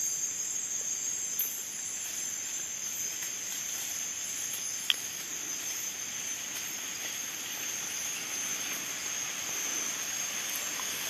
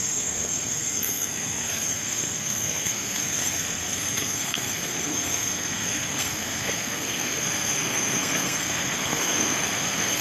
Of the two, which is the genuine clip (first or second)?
first